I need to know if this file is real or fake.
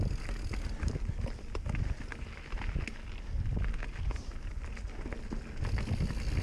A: real